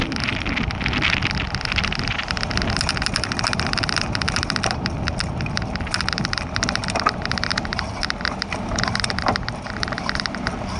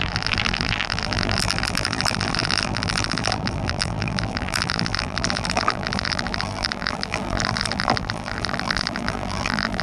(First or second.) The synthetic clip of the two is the second